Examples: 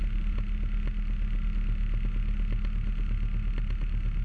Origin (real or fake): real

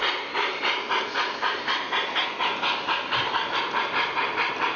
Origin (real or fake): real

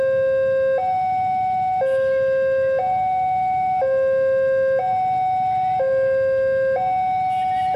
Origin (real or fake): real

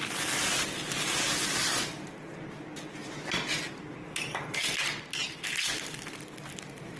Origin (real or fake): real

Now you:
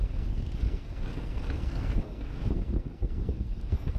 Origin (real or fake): fake